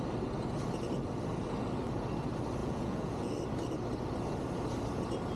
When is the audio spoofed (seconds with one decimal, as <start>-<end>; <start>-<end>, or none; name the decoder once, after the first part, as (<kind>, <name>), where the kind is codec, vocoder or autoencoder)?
2.6-3.3 (vocoder, Vocos)